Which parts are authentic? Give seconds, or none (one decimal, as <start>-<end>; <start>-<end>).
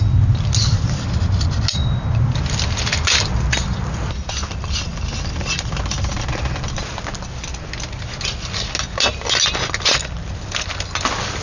0.0-11.4